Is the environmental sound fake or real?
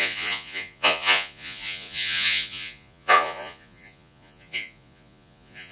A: fake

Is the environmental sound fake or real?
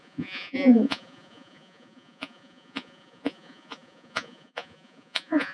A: fake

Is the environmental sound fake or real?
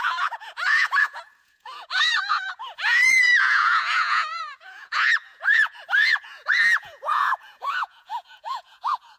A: fake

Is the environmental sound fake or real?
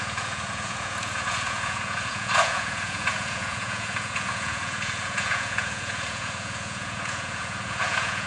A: fake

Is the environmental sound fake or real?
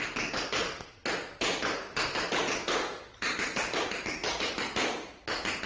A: real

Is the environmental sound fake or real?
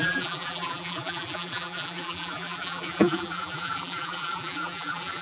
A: fake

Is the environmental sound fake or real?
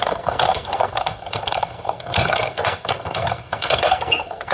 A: fake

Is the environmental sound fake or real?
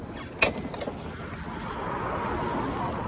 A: real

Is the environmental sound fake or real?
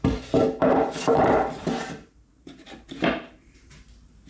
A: fake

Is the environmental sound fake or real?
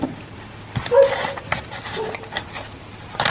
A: real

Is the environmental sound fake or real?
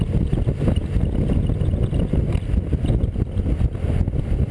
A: real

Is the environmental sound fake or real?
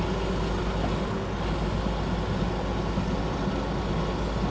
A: real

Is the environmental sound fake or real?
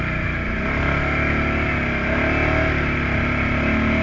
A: real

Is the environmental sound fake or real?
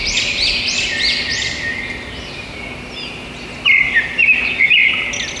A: real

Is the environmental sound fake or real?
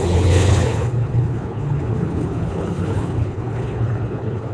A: fake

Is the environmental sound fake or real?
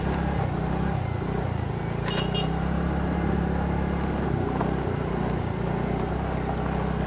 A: real